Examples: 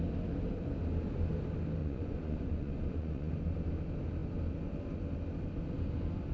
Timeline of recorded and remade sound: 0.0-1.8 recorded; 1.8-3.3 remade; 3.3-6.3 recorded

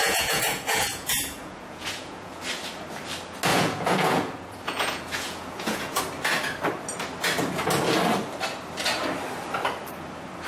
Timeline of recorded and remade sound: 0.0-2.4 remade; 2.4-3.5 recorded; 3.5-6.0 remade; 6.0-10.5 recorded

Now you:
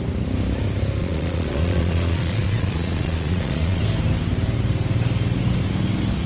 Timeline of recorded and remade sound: 0.0-1.0 recorded; 1.0-3.8 remade; 3.8-6.3 recorded

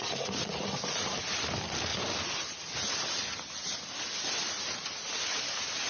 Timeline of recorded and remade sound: 0.0-5.9 recorded

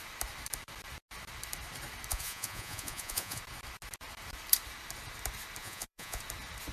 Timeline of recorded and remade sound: 0.0-2.1 recorded; 2.1-3.4 remade; 3.4-5.6 recorded; 5.6-6.2 remade; 6.2-6.7 recorded

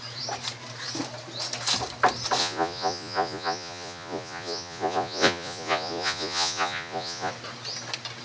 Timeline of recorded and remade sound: 0.0-2.4 recorded; 2.4-7.3 remade; 7.3-8.2 recorded

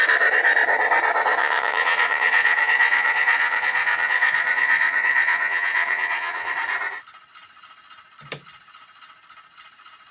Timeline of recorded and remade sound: 0.0-1.4 recorded; 1.4-6.5 remade; 6.5-10.1 recorded

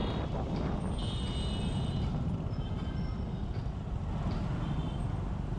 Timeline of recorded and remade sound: 0.0-5.6 recorded